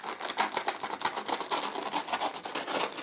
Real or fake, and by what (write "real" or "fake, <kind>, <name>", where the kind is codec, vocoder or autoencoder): real